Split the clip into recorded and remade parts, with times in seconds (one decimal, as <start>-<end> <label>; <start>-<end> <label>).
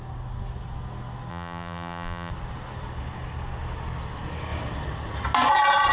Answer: 0.0-1.3 recorded; 1.3-2.3 remade; 2.3-5.9 recorded